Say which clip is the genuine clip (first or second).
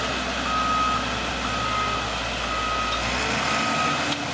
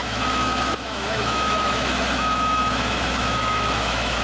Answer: first